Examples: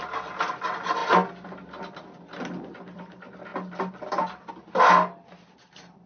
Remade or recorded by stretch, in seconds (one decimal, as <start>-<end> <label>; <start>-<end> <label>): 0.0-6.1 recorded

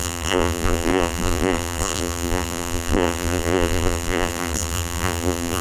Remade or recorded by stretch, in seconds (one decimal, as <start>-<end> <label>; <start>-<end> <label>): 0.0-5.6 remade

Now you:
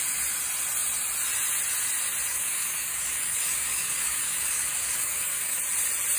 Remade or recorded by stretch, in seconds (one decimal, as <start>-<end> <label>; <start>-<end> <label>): 0.0-2.3 recorded; 2.3-5.6 remade; 5.6-6.2 recorded

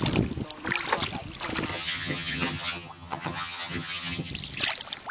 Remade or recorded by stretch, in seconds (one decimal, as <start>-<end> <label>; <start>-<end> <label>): 0.0-1.7 recorded; 1.7-4.3 remade; 4.3-5.1 recorded

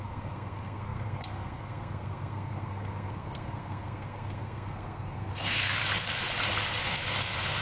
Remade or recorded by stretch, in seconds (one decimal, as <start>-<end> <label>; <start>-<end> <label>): 0.0-5.8 remade; 5.8-6.8 recorded; 6.8-7.6 remade

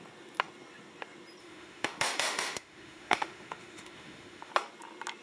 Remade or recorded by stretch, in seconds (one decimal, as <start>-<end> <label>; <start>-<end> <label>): 0.0-1.4 recorded; 1.4-4.5 remade; 4.5-5.2 recorded